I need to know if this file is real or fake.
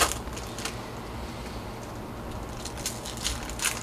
real